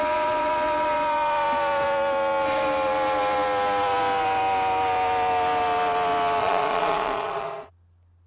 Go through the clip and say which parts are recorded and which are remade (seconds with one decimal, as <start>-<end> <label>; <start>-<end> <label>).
0.0-6.4 recorded; 6.4-7.7 remade; 7.7-8.3 recorded